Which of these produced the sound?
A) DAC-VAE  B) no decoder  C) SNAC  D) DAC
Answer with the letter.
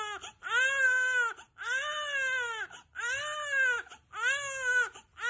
B